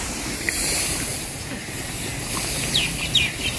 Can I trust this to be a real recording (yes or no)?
no